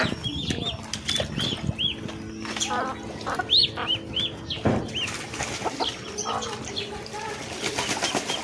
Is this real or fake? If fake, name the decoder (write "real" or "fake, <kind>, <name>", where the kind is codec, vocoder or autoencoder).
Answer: real